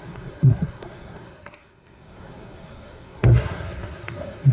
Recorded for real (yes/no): no